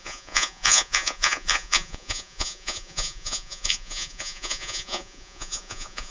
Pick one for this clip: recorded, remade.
remade